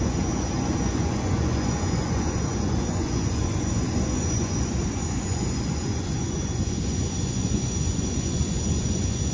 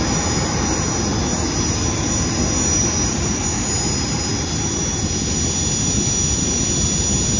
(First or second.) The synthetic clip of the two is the first